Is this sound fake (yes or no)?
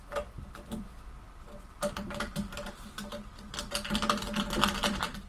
no